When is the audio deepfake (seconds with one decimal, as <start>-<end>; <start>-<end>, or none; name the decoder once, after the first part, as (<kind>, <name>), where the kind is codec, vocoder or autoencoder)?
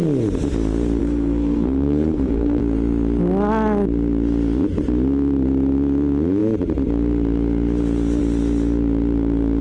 1.0-2.6 (codec, SNAC)